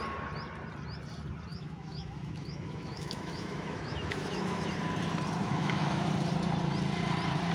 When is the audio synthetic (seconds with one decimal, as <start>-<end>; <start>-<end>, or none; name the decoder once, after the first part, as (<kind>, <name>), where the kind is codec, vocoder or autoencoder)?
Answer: 1.5-4.7 (autoencoder, DAC-VAE); 5.4-6.1